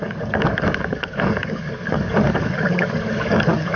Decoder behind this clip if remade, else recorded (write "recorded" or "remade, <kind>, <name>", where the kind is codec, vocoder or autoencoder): remade, codec, DAC